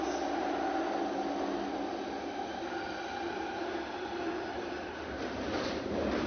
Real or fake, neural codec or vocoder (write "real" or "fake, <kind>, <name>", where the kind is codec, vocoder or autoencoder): real